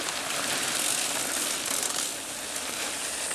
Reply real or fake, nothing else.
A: fake